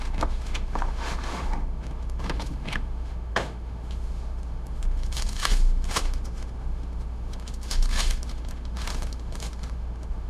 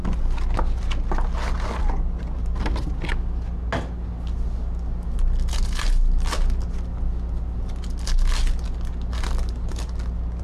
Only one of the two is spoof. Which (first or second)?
first